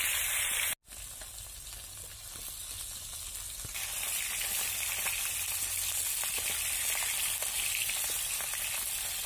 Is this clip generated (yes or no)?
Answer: no